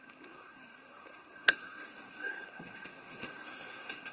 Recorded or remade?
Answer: remade